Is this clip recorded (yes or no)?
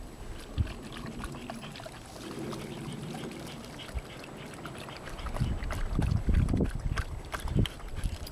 yes